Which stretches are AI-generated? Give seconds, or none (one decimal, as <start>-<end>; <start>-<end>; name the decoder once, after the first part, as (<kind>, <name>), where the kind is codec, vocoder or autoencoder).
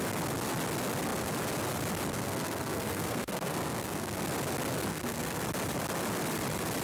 2.1-4.2 (codec, SNAC); 4.9-5.4